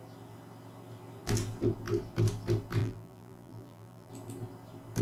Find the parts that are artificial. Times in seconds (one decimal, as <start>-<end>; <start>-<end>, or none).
2.8-4.1